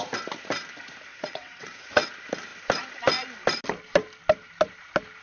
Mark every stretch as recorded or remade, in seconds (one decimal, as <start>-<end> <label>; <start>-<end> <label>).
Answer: 0.0-1.1 recorded; 1.1-2.1 remade; 2.1-5.2 recorded